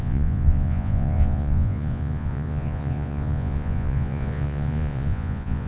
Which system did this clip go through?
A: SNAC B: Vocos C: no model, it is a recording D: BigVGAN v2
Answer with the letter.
B